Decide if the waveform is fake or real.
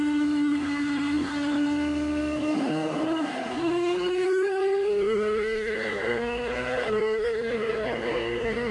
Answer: fake